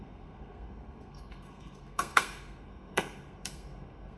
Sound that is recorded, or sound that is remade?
remade